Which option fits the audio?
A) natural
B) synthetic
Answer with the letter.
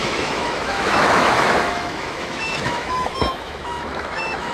B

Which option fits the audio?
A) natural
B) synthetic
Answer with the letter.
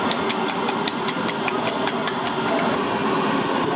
B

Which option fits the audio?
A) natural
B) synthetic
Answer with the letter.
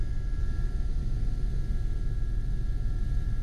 A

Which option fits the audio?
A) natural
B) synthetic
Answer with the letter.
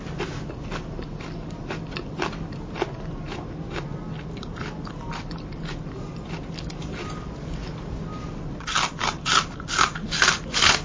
A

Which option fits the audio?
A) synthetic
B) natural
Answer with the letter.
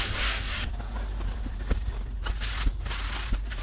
B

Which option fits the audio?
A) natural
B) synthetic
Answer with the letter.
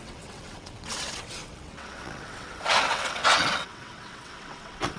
B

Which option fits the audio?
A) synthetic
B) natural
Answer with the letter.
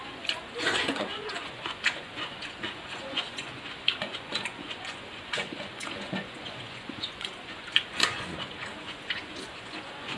A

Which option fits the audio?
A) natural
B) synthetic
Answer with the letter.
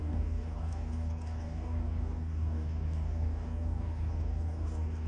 B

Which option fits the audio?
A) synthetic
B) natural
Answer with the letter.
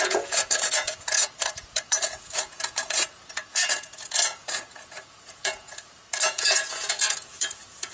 A